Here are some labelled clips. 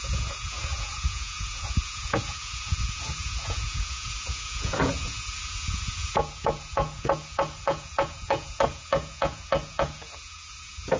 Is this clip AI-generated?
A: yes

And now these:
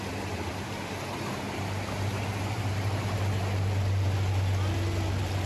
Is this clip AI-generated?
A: no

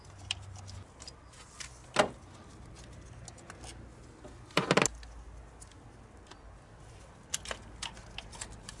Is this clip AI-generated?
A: no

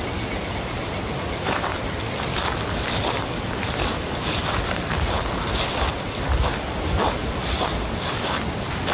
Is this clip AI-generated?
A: no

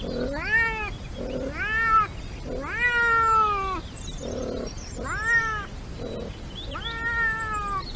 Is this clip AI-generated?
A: no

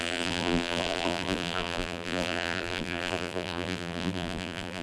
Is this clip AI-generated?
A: yes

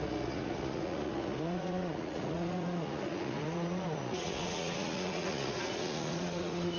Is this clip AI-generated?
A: yes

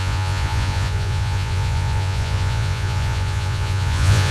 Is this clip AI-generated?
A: yes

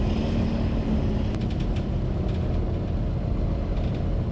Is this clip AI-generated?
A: no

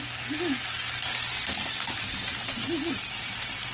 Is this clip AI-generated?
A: no